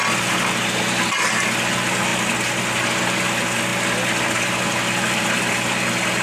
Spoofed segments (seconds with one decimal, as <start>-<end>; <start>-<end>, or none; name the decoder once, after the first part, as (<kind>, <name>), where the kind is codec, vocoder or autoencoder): none